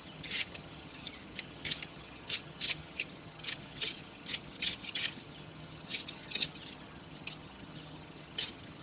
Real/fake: fake